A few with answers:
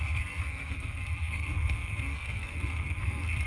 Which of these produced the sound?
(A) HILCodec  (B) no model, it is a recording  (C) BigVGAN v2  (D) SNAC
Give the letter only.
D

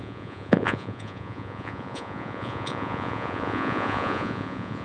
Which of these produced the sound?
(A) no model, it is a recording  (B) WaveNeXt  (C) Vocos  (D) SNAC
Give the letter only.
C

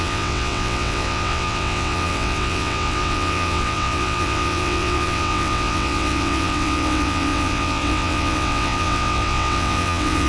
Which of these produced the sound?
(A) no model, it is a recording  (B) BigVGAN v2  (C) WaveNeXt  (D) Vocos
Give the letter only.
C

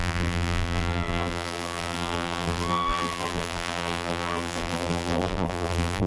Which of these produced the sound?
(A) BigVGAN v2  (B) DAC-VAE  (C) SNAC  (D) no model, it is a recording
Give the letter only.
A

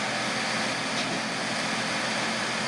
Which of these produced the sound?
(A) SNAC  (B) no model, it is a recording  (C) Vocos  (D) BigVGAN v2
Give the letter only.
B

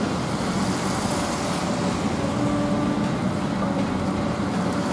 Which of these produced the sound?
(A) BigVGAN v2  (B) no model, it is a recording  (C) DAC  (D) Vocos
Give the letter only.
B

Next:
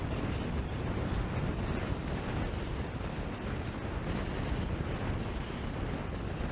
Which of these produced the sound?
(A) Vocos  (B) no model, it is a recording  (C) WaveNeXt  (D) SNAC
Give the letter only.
B